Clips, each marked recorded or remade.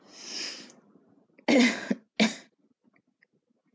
recorded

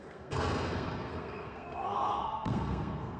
remade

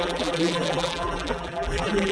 remade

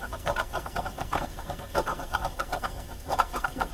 remade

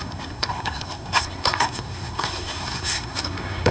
remade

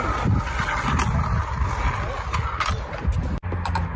recorded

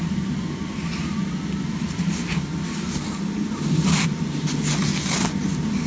recorded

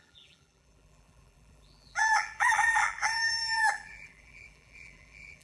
remade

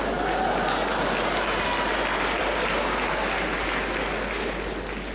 recorded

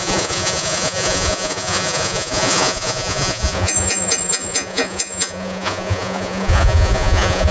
remade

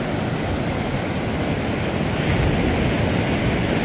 recorded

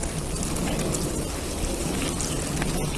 recorded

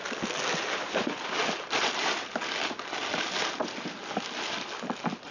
recorded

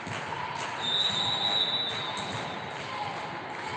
recorded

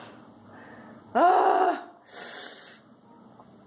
recorded